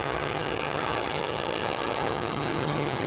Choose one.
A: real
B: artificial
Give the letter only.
B